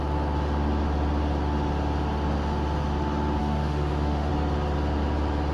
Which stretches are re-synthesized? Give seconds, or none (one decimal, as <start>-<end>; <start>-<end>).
3.4-4.3